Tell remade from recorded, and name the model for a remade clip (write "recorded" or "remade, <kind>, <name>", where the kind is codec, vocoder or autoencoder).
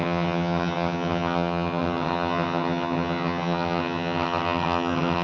remade, vocoder, HiFi-GAN